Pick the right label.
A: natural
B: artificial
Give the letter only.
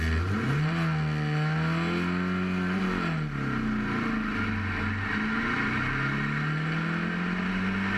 A